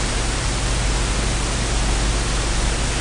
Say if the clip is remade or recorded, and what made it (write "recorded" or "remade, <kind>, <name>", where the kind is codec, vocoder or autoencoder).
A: recorded